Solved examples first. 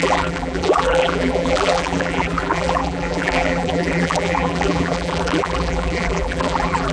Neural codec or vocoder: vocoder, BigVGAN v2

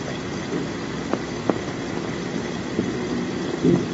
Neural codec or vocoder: none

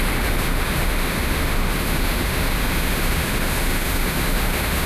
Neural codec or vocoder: autoencoder, DAC-VAE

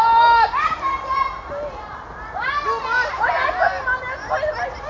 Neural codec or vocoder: none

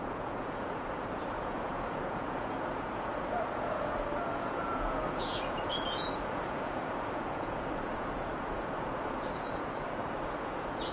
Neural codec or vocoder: vocoder, Vocos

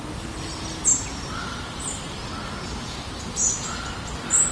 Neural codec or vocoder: none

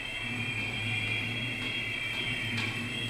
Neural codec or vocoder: none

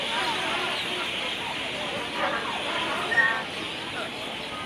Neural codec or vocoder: none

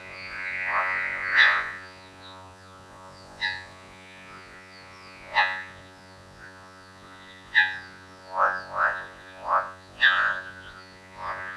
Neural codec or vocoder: vocoder, Vocos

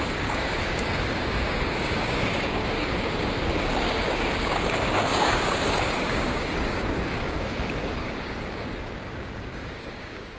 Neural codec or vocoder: codec, DAC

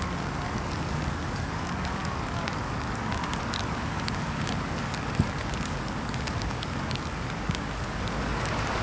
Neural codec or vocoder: codec, DAC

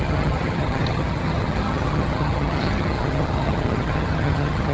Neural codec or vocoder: vocoder, HiFi-GAN